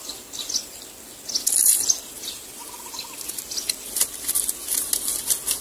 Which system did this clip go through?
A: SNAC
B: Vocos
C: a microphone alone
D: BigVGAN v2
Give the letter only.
C